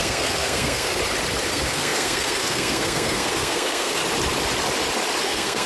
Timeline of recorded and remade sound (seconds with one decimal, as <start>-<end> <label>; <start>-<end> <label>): 0.0-1.0 remade; 1.0-1.5 recorded; 1.5-4.0 remade; 4.0-5.2 recorded; 5.2-5.7 remade